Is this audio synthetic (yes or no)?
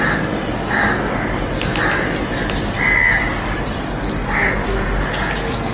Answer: no